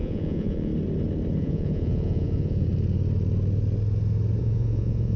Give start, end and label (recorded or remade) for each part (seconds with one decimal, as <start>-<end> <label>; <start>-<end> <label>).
0.0-0.7 remade; 0.7-1.4 recorded; 1.4-2.7 remade; 2.7-4.4 recorded; 4.4-5.2 remade